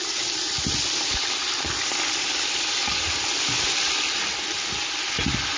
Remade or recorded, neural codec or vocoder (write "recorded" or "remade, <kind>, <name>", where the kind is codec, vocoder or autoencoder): recorded